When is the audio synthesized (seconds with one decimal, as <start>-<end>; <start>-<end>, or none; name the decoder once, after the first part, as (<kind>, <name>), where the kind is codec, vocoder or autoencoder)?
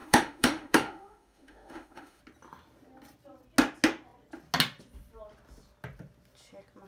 0.0-2.2 (autoencoder, DAC-VAE)